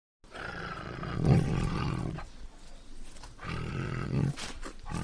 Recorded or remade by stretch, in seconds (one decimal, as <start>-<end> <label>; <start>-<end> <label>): 0.0-0.5 recorded; 0.5-2.8 remade; 2.8-3.7 recorded; 3.7-4.3 remade; 4.3-5.0 recorded